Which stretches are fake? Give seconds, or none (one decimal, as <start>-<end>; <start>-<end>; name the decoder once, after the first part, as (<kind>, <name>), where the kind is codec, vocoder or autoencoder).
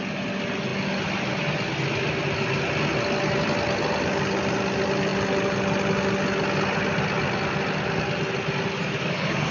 8.8-9.5 (codec, DAC)